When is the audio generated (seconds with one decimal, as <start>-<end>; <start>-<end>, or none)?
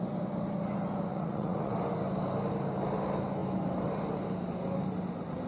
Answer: 1.1-1.7